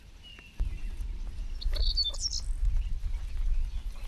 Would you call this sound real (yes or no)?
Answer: yes